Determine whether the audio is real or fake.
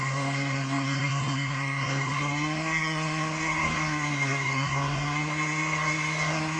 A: fake